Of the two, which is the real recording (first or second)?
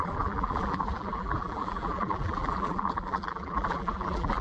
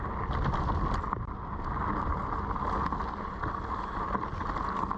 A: second